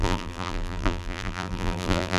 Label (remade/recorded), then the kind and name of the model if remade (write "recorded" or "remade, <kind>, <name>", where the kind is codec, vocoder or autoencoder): remade, vocoder, BigVGAN v2